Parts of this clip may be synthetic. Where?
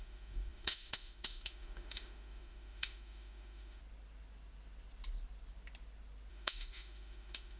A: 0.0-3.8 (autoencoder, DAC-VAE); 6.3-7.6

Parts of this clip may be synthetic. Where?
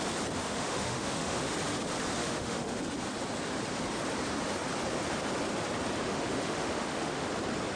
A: 0.4-1.5 (autoencoder, DAC-VAE); 2.2-2.8; 6.1-7.3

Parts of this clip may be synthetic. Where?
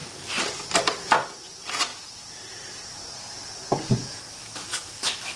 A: 4.0-5.4 (autoencoder, DAC-VAE)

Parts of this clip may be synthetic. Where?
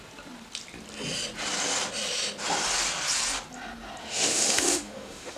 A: 4.0-5.4 (autoencoder, DAC-VAE)